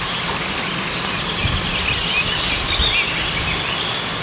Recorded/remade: recorded